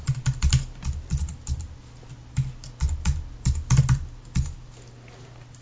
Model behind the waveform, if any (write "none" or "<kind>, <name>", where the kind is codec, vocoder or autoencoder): none